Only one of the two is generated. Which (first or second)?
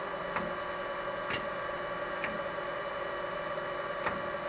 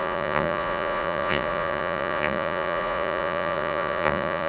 second